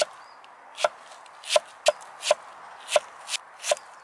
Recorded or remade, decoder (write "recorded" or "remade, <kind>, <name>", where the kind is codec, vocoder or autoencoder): recorded